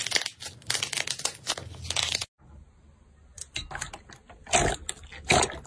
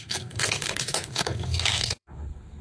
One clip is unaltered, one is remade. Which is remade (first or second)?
second